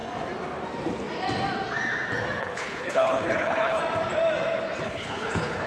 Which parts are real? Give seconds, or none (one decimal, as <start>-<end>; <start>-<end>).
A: 0.0-2.4; 3.8-4.8

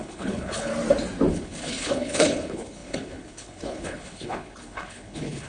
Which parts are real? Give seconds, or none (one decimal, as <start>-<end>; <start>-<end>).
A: 0.7-1.3

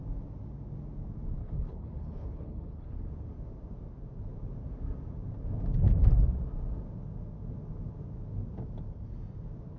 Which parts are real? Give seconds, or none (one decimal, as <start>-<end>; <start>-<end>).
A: 0.0-1.4; 3.1-9.8

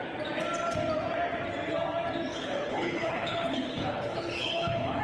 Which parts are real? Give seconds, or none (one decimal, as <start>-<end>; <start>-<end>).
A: 0.0-2.3

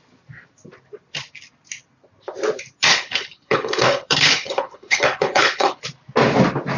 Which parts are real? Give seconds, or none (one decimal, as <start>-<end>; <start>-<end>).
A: 0.0-2.9; 5.8-6.8

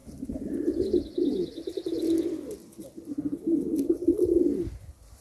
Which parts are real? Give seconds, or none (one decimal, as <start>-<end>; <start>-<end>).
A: 0.0-5.2